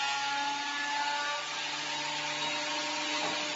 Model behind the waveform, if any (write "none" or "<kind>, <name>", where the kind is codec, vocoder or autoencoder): none